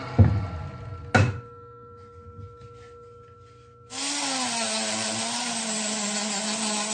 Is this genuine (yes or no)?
yes